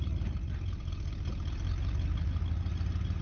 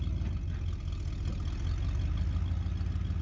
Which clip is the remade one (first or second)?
first